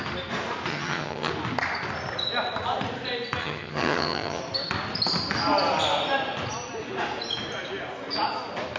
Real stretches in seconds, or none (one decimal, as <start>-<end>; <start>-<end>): 0.0-0.7; 1.3-3.4; 4.4-8.8